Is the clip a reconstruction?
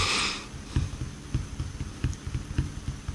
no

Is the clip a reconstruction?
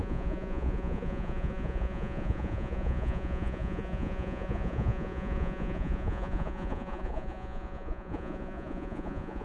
yes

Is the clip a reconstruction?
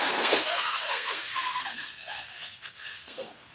yes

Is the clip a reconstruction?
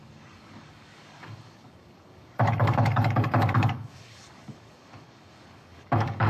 yes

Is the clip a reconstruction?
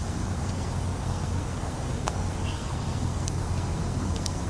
yes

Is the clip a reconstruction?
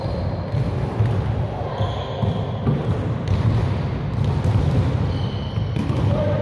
no